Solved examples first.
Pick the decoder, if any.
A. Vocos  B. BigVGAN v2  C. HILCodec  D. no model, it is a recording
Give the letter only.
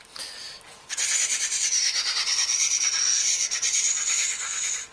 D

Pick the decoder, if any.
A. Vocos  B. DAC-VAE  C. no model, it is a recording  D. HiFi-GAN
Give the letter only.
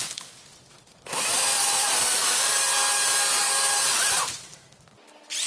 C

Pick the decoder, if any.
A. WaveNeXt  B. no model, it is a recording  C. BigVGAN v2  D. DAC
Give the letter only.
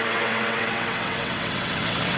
A